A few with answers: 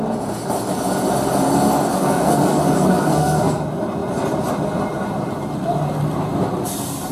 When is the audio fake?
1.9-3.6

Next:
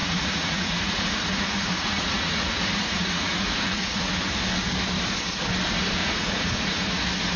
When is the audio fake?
0.0-4.4; 6.0-7.0

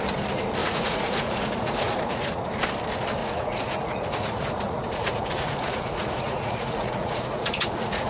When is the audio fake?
0.6-2.5; 3.2-8.1

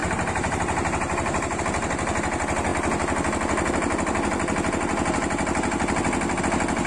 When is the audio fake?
0.0-1.6

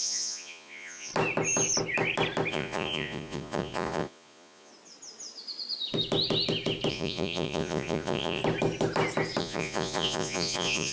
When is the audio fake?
0.0-1.1; 2.5-4.7; 6.9-8.4; 9.4-10.9

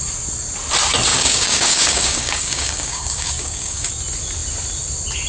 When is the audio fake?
1.1-3.9